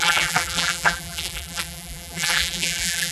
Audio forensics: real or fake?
fake